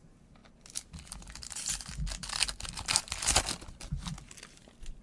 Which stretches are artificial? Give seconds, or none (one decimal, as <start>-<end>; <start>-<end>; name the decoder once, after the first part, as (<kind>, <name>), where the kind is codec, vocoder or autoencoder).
none